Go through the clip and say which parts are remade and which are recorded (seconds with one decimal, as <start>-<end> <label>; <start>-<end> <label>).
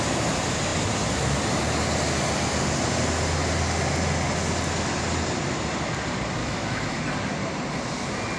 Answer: 0.0-6.4 recorded; 6.4-7.0 remade; 7.0-8.4 recorded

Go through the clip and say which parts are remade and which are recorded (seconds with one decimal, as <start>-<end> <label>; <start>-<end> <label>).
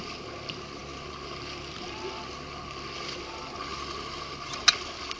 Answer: 0.0-5.2 recorded